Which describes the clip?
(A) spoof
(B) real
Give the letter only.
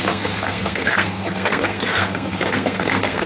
A